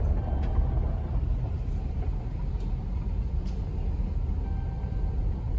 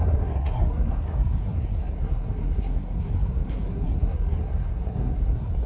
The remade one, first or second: second